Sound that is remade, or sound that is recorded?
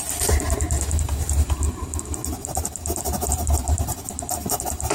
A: remade